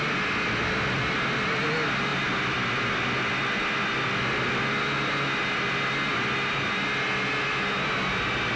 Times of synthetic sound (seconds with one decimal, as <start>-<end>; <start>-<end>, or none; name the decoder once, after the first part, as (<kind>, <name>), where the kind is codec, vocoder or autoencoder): none